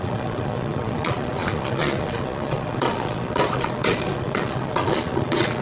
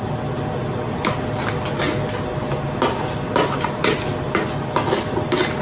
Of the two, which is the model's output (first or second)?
first